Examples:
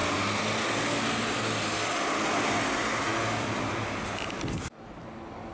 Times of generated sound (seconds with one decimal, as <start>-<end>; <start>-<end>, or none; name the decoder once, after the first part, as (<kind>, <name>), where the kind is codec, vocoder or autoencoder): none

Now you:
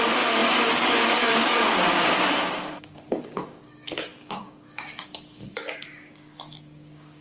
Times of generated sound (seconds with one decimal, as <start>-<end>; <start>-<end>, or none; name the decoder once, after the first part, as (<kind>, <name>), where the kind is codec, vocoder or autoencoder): 0.0-7.2 (codec, DAC)

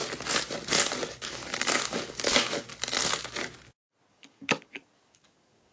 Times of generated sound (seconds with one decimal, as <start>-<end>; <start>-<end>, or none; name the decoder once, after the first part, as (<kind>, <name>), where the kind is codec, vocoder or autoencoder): 1.1-2.7 (codec, DAC); 4.1-5.7

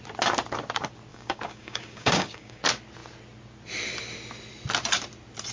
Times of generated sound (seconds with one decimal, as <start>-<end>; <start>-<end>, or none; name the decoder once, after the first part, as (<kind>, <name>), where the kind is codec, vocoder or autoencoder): 1.1-2.6 (codec, DAC)

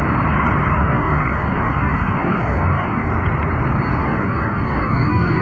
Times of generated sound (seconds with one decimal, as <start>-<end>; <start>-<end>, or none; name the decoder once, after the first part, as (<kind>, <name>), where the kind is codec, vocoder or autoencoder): 0.7-3.1 (codec, DAC); 4.0-5.4